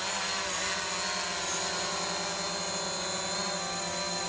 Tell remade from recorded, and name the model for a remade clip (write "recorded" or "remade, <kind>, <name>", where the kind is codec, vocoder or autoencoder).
recorded